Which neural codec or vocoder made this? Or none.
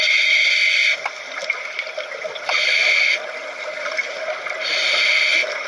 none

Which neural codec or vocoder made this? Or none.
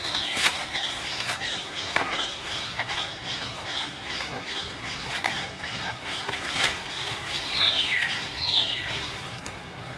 codec, SNAC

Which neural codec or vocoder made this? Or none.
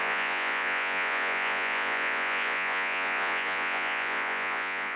vocoder, Vocos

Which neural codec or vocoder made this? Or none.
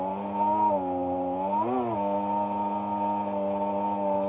none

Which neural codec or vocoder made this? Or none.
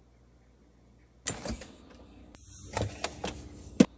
none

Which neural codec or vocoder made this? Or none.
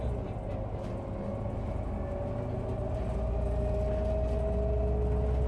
none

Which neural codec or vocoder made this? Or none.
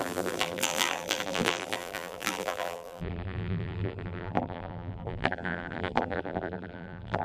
vocoder, BigVGAN v2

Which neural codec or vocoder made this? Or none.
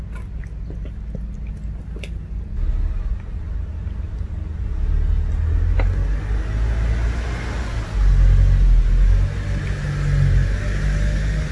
none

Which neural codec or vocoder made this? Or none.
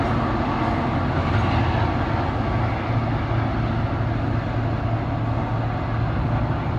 none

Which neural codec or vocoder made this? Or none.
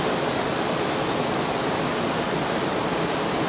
none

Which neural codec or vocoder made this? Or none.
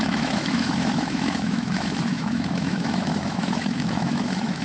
autoencoder, DAC-VAE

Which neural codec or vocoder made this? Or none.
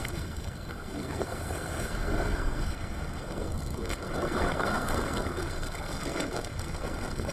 codec, SNAC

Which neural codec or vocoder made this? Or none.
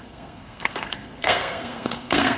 codec, SNAC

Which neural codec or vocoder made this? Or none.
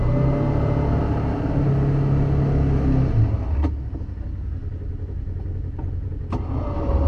none